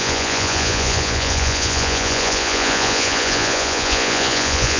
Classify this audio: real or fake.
fake